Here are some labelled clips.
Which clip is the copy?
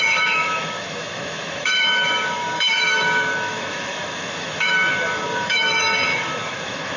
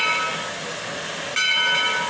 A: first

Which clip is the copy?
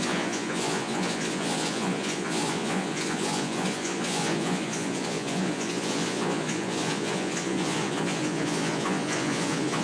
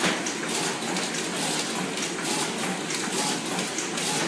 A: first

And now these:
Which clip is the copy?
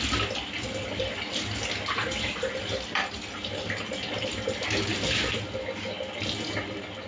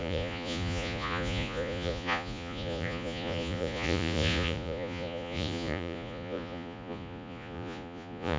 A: second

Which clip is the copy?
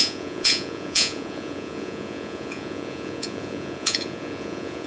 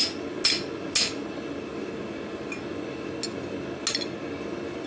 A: first